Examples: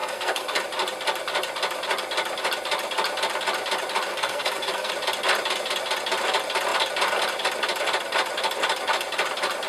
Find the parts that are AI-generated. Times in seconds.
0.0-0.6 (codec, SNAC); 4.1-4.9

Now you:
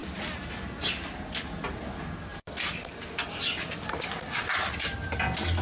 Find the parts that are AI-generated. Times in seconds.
none

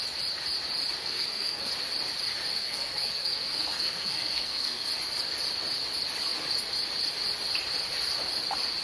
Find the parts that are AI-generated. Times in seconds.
1.0-1.7 (codec, SNAC); 2.5-4.9

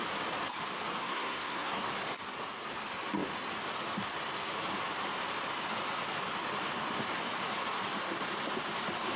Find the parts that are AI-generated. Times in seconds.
1.0-1.9 (codec, SNAC)

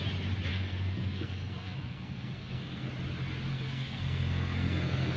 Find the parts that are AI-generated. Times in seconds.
0.5-2.9 (codec, SNAC); 3.5-5.2

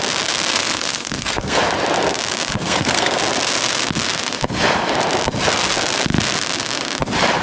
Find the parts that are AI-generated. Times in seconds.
0.5-1.6 (codec, SNAC); 2.5-3.2

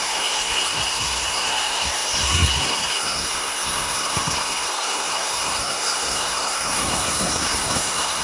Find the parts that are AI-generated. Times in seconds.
0.0-8.2 (codec, SNAC)

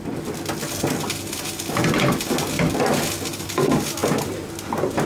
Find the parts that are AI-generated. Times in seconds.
none